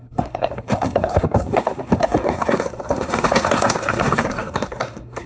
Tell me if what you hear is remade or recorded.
remade